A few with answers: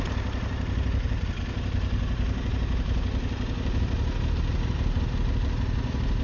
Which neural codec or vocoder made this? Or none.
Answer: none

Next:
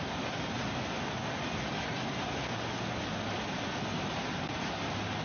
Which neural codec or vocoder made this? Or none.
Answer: none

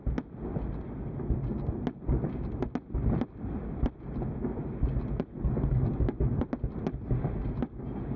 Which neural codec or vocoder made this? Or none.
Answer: none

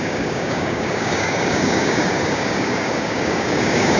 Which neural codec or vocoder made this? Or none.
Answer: codec, DAC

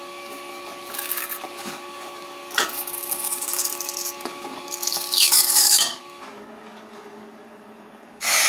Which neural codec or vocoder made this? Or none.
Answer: codec, DAC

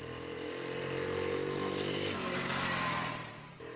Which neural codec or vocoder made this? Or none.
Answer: none